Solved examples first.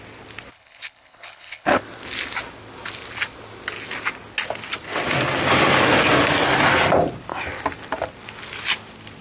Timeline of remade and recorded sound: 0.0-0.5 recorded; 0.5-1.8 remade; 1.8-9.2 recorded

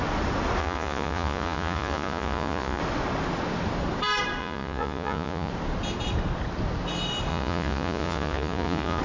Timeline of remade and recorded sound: 0.0-0.6 recorded; 0.6-2.8 remade; 2.8-4.4 recorded; 4.4-5.5 remade; 5.5-7.3 recorded; 7.3-9.0 remade

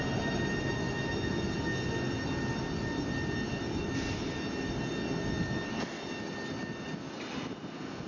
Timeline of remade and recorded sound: 0.0-8.1 recorded